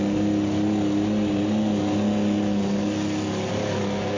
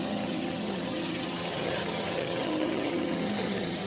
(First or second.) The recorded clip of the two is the first